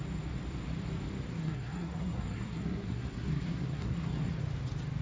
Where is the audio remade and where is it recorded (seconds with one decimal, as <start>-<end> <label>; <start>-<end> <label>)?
0.0-1.3 recorded; 1.3-4.3 remade; 4.3-5.0 recorded